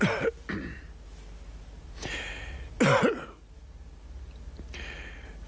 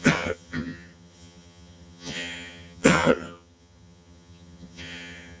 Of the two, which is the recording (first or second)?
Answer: first